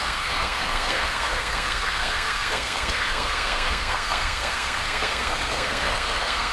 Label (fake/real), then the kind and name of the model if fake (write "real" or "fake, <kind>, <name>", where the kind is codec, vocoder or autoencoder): fake, codec, SNAC